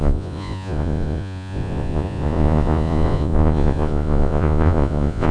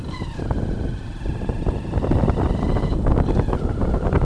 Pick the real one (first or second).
second